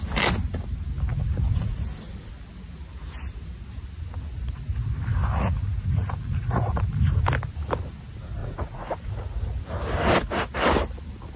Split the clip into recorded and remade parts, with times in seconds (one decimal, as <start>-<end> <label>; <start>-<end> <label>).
0.0-1.1 recorded; 1.1-2.3 remade; 2.3-5.3 recorded; 5.3-6.9 remade; 6.9-8.4 recorded; 8.4-9.6 remade; 9.6-11.4 recorded